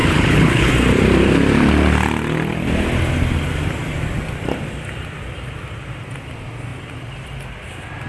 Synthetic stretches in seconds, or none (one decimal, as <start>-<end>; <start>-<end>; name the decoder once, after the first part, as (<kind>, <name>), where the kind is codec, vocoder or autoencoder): 0.0-0.7 (codec, HILCodec)